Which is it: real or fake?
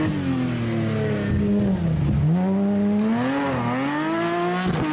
real